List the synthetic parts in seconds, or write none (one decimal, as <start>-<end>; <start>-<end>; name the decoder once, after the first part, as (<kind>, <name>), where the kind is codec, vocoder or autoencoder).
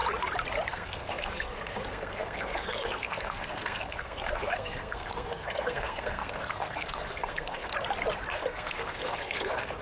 0.7-7.7 (codec, SNAC); 8.3-9.8